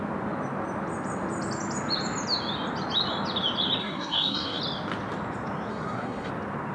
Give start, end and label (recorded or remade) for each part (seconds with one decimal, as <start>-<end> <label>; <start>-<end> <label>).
0.0-3.8 recorded; 3.8-4.6 remade; 4.6-5.7 recorded; 5.7-6.3 remade; 6.3-6.7 recorded